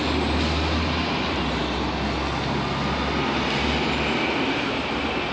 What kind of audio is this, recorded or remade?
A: recorded